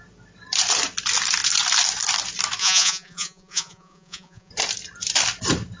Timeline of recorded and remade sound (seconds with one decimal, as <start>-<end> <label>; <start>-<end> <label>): 0.0-2.6 recorded; 2.6-4.5 remade; 4.5-5.8 recorded